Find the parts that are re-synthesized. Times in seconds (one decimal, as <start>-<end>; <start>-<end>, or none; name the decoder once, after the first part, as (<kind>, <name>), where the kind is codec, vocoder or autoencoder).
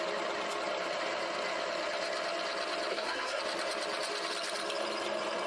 2.9-3.4 (codec, SNAC)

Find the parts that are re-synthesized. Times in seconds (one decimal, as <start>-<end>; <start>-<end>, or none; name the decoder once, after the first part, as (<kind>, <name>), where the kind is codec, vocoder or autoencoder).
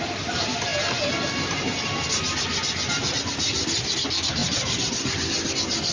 none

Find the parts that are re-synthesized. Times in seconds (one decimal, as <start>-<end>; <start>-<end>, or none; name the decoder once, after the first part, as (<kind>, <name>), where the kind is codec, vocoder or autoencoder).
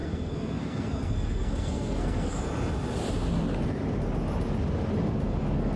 0.0-2.3 (codec, SNAC)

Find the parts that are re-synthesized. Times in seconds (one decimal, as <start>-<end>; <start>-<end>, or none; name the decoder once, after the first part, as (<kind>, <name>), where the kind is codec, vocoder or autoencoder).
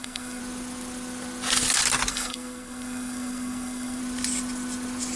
0.0-0.4 (codec, SNAC); 2.1-4.0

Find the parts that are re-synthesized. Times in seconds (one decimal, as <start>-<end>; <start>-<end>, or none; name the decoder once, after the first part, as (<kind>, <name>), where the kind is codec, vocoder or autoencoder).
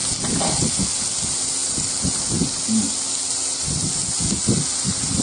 none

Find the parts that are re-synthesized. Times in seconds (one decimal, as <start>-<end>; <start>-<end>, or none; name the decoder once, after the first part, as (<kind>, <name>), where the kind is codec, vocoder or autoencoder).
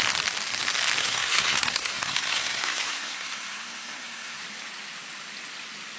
1.0-4.4 (codec, SNAC)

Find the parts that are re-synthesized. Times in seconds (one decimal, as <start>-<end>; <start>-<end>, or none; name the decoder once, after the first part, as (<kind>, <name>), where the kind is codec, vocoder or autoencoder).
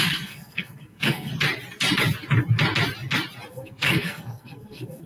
0.0-1.3 (codec, SNAC); 3.5-5.1